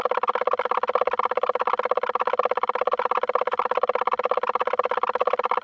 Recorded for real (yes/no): yes